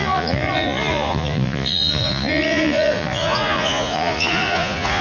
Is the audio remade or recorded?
remade